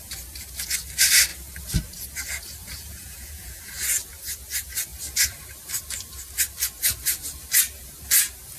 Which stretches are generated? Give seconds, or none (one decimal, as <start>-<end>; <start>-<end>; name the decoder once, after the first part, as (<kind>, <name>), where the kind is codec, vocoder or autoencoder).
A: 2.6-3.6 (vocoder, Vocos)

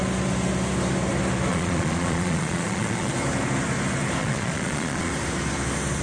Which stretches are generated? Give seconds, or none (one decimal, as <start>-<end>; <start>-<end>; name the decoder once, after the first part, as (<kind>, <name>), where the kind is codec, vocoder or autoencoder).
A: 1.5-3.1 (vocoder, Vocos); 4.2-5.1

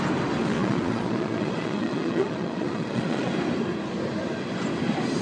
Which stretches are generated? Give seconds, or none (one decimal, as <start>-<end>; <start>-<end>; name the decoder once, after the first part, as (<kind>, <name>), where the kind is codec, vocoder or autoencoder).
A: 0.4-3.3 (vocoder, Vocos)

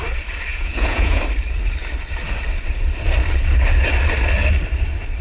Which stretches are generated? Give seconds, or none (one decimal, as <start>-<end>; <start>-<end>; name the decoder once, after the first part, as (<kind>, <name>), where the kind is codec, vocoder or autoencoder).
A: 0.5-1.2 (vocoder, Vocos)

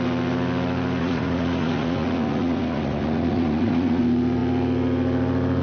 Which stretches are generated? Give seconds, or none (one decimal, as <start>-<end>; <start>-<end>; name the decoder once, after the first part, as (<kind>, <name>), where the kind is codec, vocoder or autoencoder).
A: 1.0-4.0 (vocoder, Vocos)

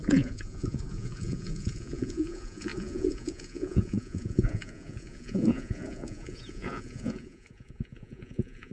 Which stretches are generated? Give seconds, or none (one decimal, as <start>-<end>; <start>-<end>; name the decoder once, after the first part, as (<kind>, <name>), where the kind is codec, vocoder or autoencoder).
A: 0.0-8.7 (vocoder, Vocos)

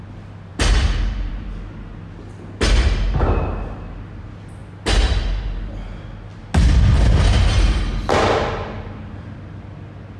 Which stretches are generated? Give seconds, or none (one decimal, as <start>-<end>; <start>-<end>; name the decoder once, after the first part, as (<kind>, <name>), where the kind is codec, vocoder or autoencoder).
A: none

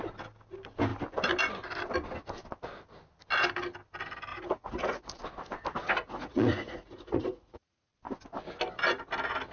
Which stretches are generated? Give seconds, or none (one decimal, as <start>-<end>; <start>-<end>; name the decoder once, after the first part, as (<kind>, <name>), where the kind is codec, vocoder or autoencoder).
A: 4.3-5.2 (vocoder, Vocos); 5.8-7.9